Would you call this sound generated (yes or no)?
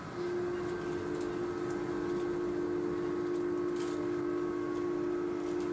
no